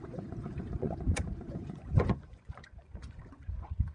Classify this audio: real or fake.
fake